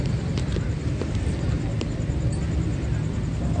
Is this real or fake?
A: real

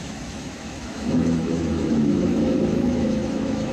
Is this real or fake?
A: fake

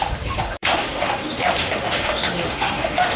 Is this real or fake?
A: fake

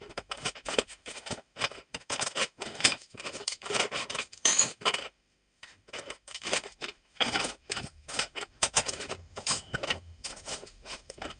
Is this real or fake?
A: fake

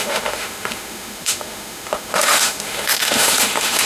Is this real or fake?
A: fake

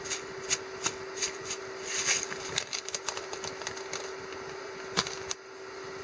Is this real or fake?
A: real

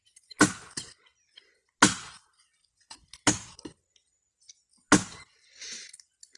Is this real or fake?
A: real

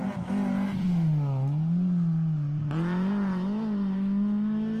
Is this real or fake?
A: real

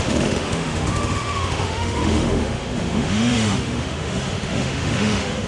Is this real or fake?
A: fake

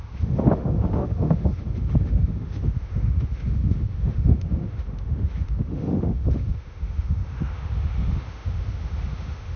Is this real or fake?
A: fake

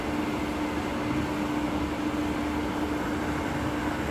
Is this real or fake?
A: real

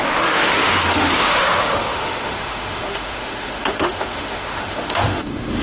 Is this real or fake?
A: fake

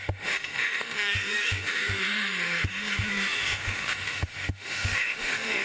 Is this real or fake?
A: fake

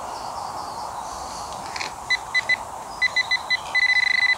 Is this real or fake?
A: real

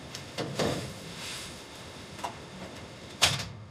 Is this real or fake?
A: fake